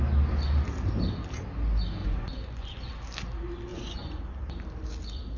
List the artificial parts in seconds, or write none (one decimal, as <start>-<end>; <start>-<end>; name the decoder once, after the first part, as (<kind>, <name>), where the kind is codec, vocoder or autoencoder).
2.0-2.9 (vocoder, Vocos); 3.7-4.2

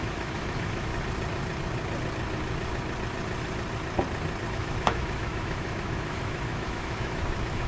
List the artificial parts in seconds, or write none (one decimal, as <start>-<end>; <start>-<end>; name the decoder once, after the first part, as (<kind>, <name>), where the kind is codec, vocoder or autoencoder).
0.0-0.9 (autoencoder, DAC-VAE); 4.5-7.7

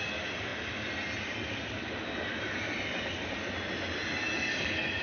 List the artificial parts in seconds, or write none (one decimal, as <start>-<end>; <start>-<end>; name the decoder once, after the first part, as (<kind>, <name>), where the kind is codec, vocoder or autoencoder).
none

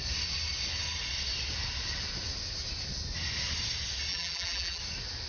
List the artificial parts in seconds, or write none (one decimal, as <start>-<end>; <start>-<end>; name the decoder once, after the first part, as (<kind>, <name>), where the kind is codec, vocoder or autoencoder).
4.1-4.8 (vocoder, BigVGAN v2)